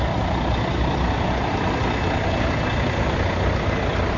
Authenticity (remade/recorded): recorded